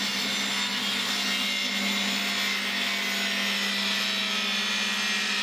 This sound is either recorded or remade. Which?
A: recorded